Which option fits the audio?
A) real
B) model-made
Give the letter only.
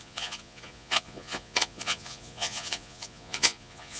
B